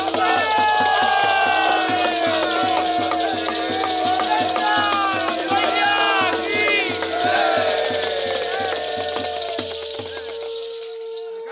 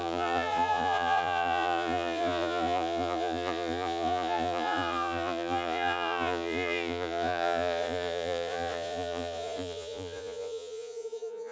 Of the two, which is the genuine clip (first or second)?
first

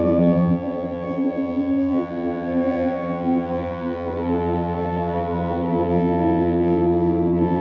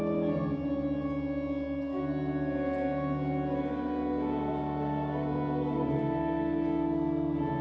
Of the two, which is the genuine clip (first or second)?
second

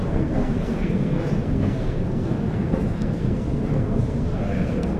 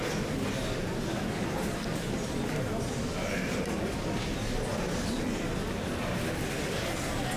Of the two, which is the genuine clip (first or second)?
second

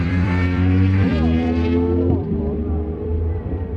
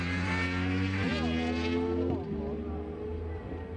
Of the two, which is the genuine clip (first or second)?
second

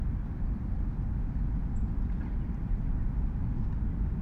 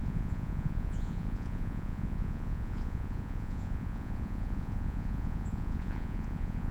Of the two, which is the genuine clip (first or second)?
first